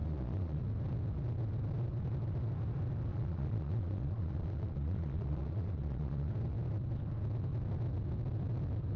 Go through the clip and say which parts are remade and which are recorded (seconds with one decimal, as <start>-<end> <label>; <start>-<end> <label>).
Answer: 0.0-0.6 remade; 0.6-3.1 recorded; 3.1-6.3 remade; 6.3-9.0 recorded